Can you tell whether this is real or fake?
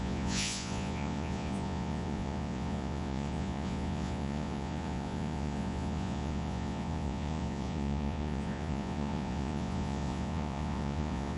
fake